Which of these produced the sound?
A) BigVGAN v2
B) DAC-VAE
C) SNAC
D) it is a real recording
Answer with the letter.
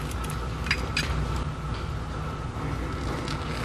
D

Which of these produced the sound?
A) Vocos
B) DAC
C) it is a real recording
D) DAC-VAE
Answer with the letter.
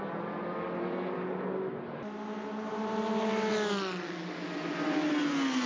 C